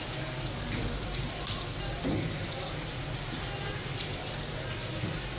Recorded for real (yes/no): yes